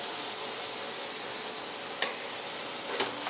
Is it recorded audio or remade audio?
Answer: recorded